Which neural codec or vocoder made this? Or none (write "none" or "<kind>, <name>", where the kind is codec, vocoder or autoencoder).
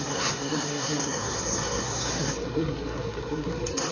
codec, SNAC